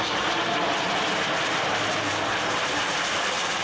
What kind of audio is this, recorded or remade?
recorded